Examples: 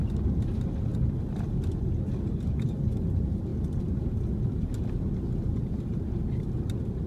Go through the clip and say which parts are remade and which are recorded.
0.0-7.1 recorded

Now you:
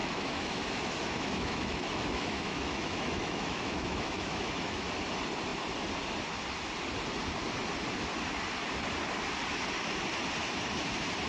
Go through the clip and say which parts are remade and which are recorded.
0.0-4.9 remade; 4.9-11.3 recorded

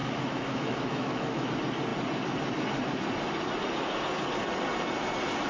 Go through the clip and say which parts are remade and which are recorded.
0.0-1.5 remade; 1.5-5.5 recorded

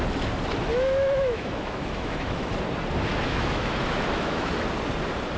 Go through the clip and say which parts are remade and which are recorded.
0.0-0.7 recorded; 0.7-2.5 remade; 2.5-3.1 recorded; 3.1-4.5 remade; 4.5-5.4 recorded